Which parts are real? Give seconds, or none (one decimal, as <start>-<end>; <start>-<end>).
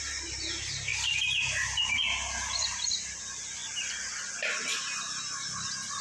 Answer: 0.0-6.0